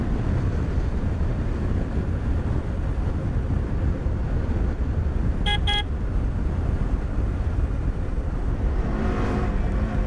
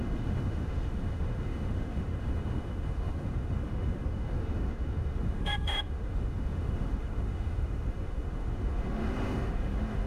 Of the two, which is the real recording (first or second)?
first